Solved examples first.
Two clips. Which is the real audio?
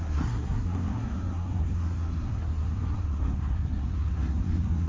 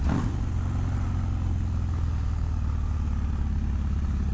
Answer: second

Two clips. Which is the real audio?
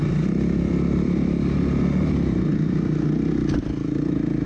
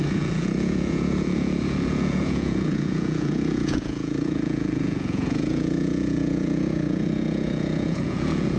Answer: first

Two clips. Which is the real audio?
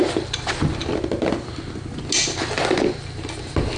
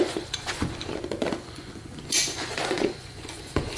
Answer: first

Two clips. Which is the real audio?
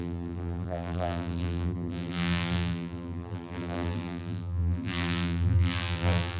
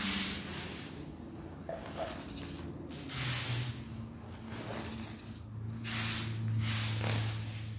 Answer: second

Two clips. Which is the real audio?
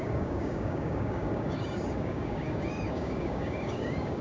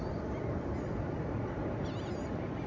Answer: second